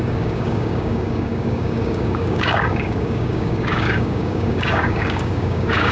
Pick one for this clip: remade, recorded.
remade